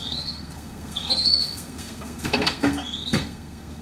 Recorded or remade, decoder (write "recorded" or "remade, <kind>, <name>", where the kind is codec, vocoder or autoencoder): remade, codec, SNAC